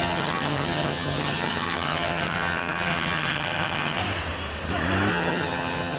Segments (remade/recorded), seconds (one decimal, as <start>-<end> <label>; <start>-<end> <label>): 0.0-4.0 remade; 4.0-5.1 recorded; 5.1-6.0 remade